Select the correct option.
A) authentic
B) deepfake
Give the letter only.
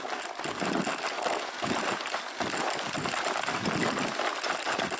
A